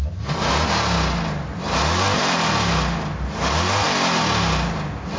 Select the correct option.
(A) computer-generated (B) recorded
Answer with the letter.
B